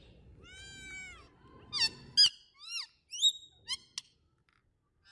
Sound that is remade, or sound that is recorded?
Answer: recorded